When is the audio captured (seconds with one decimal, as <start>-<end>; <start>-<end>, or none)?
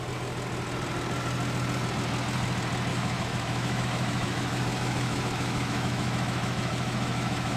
0.0-2.9